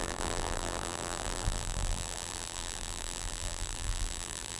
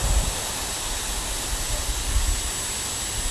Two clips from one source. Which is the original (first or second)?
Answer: second